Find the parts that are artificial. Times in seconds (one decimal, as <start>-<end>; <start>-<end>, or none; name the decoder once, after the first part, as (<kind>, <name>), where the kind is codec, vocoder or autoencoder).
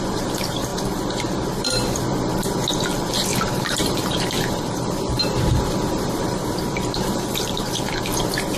0.7-2.0 (vocoder, BigVGAN v2); 3.3-7.9